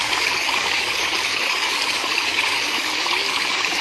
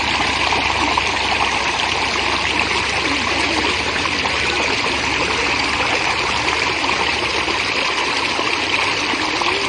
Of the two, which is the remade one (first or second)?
first